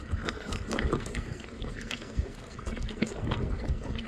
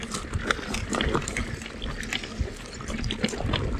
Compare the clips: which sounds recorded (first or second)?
second